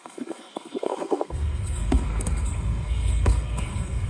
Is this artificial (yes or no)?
yes